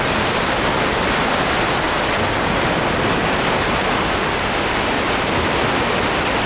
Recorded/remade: recorded